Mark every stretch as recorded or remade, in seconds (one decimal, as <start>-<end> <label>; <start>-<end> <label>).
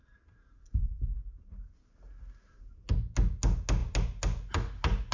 0.0-5.1 recorded